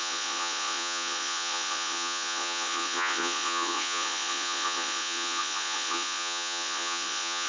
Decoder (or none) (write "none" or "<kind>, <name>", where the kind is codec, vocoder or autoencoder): vocoder, Vocos